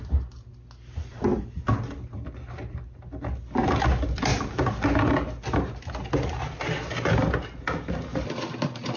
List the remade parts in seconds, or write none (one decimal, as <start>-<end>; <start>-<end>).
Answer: none